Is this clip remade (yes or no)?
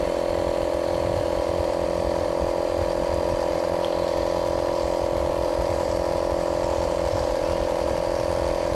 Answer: no